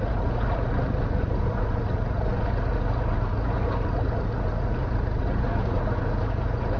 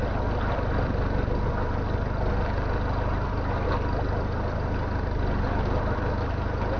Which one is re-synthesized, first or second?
first